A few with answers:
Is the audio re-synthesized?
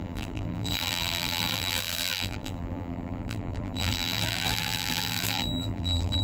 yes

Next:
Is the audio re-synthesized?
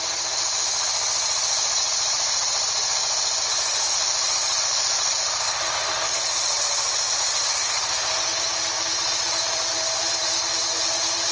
yes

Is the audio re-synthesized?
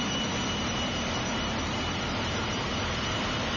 yes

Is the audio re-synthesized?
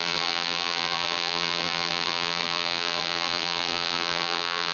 yes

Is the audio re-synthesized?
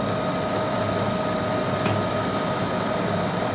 no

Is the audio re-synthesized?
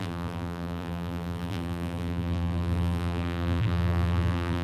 yes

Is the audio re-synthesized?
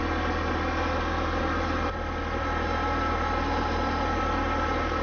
no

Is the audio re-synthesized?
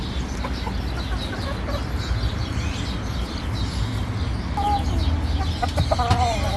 no